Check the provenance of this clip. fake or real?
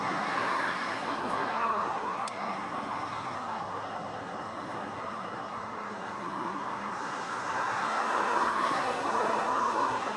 fake